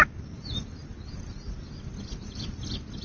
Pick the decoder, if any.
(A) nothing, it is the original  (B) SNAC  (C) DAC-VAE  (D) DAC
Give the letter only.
A